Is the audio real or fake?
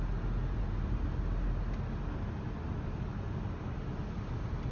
real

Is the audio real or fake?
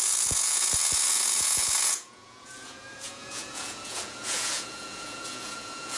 fake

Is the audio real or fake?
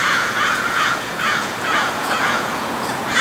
fake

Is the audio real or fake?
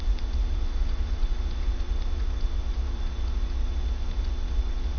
fake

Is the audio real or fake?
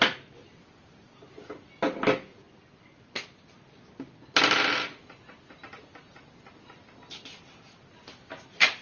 real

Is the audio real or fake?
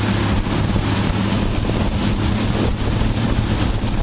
real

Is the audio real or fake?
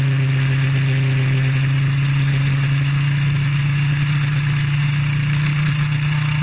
real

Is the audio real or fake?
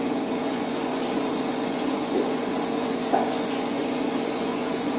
fake